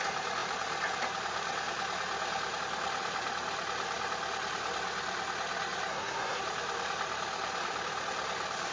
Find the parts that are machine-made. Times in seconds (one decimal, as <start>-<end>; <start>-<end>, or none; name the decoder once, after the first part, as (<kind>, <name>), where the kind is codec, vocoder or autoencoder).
5.9-6.4 (codec, SNAC)